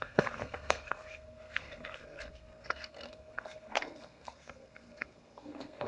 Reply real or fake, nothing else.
fake